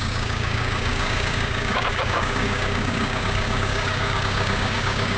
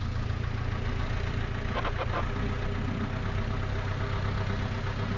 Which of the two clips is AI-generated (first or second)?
first